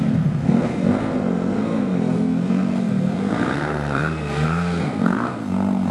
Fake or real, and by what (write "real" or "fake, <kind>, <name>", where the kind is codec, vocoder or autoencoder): fake, codec, SNAC